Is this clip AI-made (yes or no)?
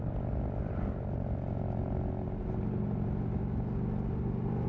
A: no